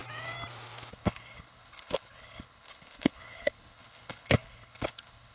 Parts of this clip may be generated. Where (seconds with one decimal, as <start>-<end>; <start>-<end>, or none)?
0.9-5.3